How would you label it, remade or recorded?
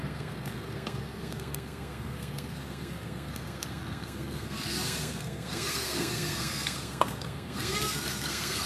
remade